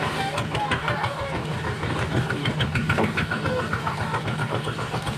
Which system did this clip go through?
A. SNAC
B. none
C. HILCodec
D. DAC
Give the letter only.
D